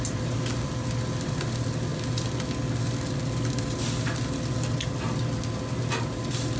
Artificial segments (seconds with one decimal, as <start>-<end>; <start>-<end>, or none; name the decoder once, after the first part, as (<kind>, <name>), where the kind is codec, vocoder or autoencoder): none